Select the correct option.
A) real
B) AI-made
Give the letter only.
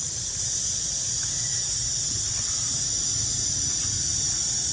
A